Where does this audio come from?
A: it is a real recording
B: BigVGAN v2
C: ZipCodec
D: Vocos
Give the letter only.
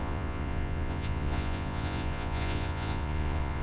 D